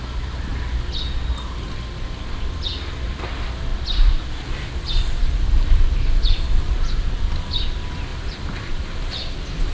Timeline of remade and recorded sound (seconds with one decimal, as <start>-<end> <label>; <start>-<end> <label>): 0.0-3.7 recorded; 3.7-4.2 remade; 4.2-9.7 recorded